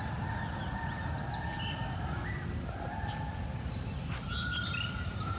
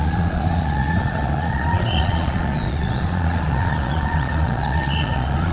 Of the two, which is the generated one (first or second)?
second